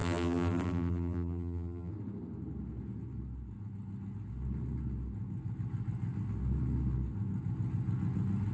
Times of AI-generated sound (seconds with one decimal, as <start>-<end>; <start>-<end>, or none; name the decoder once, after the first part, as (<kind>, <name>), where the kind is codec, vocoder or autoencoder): 0.0-1.9 (vocoder, BigVGAN v2)